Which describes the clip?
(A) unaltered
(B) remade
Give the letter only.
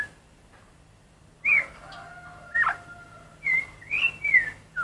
A